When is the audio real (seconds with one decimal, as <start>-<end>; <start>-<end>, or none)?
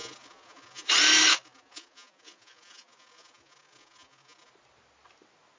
0.9-1.3; 4.5-5.6